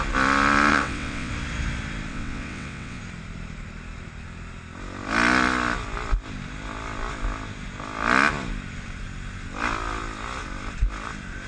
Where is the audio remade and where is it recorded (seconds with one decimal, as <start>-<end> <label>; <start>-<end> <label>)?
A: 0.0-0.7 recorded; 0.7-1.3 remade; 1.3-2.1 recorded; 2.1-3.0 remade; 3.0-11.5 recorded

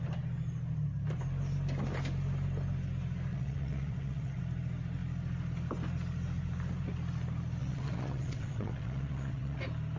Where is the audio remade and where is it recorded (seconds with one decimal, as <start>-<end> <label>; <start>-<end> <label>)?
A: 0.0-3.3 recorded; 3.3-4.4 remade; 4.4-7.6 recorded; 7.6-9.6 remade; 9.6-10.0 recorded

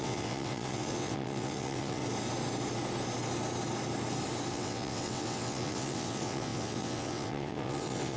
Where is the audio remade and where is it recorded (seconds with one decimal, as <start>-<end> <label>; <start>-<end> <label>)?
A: 0.0-2.0 remade; 2.0-4.5 recorded; 4.5-8.2 remade

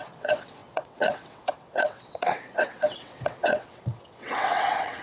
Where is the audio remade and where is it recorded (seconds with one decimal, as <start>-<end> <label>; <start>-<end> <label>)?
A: 0.0-5.0 remade

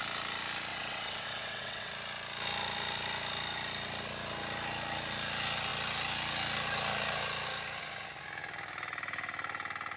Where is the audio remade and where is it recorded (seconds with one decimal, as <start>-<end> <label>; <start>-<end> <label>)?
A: 0.0-0.7 recorded; 0.7-1.9 remade; 1.9-10.0 recorded